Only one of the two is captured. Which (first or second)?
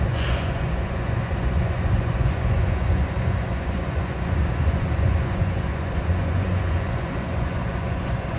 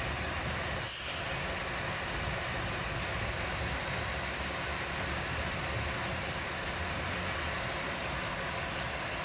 second